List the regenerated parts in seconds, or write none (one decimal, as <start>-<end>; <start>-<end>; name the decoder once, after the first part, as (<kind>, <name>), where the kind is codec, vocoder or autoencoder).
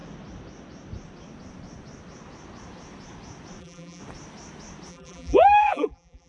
3.6-4.0 (vocoder, BigVGAN v2); 4.9-6.3